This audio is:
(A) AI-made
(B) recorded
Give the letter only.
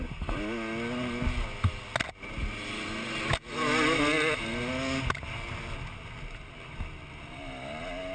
B